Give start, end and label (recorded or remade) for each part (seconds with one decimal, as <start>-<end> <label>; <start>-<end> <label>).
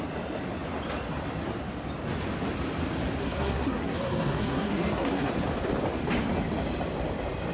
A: 0.0-3.2 recorded; 3.2-5.3 remade; 5.3-7.5 recorded